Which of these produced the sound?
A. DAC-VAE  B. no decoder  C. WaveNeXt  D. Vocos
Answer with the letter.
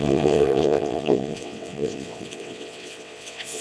C